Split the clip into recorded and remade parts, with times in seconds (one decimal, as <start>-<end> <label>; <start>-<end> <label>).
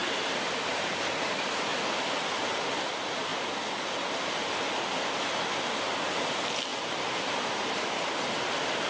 0.0-0.7 remade; 0.7-6.7 recorded; 6.7-8.4 remade; 8.4-8.9 recorded